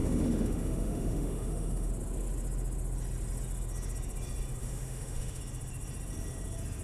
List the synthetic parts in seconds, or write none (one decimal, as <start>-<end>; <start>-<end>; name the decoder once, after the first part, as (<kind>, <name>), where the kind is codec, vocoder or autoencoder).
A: 0.0-1.9 (autoencoder, DAC-VAE); 4.6-5.4